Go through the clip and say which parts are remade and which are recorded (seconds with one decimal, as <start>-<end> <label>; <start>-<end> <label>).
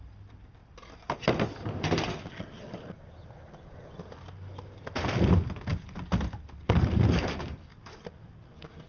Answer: 0.0-8.9 recorded